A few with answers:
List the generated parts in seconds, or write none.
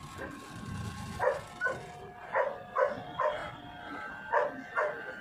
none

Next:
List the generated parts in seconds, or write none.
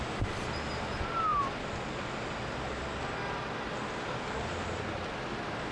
none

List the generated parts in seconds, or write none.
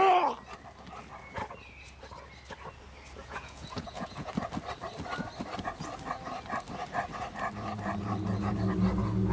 3.2-4.3 (vocoder, Vocos)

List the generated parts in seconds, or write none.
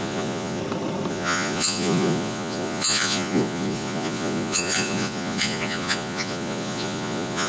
0.0-0.6 (vocoder, Vocos); 1.1-7.5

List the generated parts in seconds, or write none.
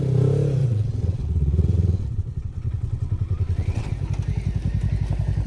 0.6-3.9 (vocoder, WaveNeXt)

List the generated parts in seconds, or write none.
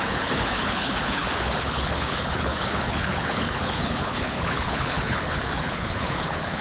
0.0-6.6 (codec, HILCodec)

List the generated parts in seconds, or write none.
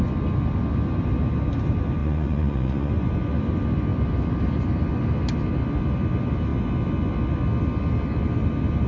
2.0-2.9 (vocoder, Vocos)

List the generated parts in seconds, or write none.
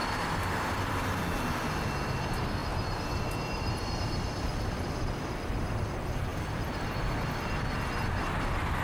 0.0-1.2 (vocoder, BigVGAN v2)